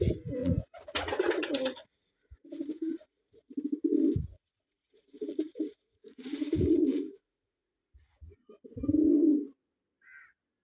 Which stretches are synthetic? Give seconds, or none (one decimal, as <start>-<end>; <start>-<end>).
0.4-3.5; 4.3-8.5